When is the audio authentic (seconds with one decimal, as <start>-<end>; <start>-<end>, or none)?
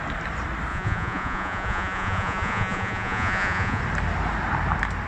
0.0-0.7; 3.8-5.1